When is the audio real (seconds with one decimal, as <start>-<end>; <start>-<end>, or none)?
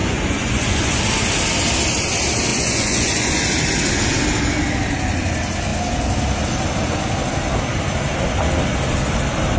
1.0-2.5; 3.4-9.6